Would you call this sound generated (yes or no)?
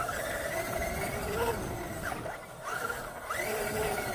yes